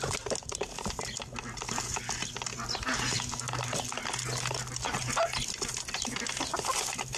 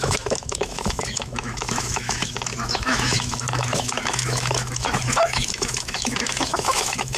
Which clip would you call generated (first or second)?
second